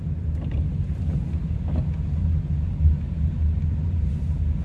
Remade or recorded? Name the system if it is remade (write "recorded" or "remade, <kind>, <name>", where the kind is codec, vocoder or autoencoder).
recorded